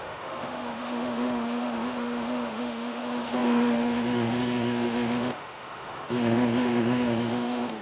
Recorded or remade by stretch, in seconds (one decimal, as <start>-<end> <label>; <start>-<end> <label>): 0.0-7.8 remade